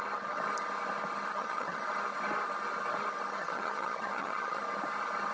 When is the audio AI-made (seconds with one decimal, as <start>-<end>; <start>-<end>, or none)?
1.3-1.8; 3.3-4.6